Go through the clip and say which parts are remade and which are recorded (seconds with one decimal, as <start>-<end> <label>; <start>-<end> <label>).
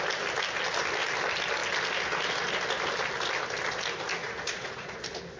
0.0-4.2 recorded; 4.2-5.0 remade; 5.0-5.4 recorded